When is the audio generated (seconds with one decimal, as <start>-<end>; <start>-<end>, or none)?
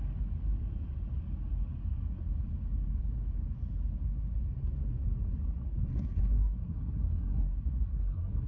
5.9-8.5